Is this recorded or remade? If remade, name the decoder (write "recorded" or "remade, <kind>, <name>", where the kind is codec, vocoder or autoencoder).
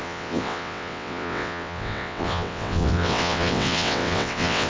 remade, vocoder, WaveNeXt